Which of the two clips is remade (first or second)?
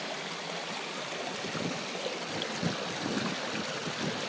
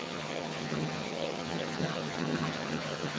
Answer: second